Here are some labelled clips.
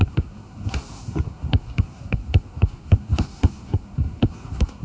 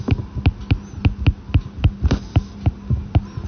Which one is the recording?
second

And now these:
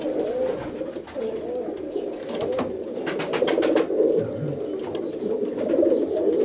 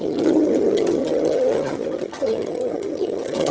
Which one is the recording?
first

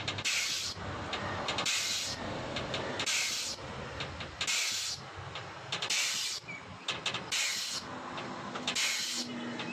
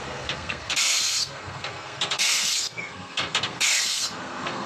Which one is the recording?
first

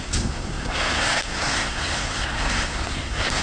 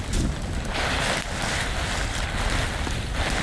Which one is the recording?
second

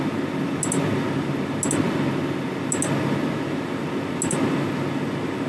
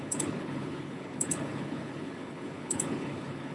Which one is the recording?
first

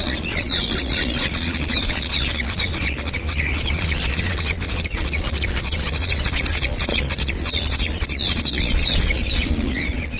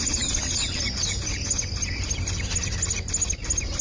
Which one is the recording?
second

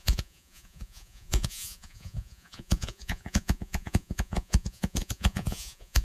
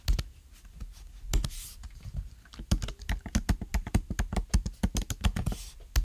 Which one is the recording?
second